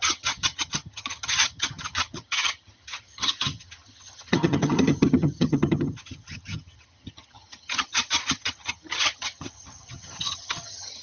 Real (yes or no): no